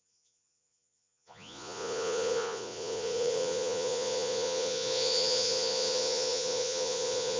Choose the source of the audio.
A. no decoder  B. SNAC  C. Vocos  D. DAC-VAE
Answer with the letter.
C